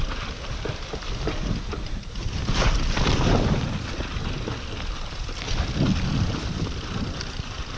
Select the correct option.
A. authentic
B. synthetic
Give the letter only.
A